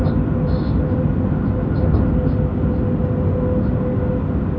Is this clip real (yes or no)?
yes